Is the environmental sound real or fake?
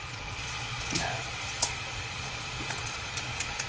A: fake